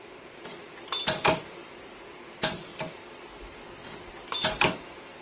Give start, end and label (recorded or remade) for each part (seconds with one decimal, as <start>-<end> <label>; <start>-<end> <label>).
0.0-1.6 remade; 1.6-2.1 recorded; 2.1-2.7 remade; 2.7-4.1 recorded; 4.1-5.2 remade